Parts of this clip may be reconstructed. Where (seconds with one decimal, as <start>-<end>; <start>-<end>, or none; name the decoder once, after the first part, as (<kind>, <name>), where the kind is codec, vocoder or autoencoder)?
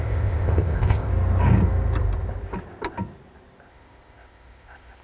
0.0-1.1 (codec, ZipCodec); 3.7-5.0